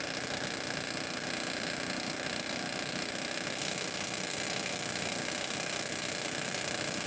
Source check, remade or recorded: remade